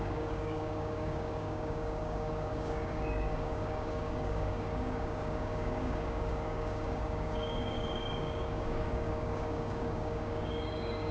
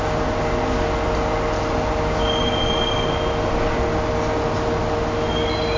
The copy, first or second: first